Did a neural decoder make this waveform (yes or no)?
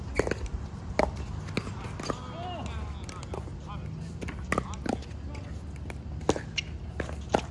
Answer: no